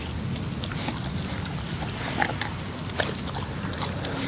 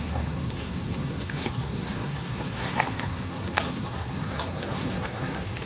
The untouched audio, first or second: first